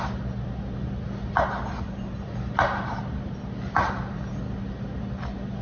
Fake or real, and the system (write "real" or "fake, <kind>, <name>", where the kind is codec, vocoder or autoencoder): real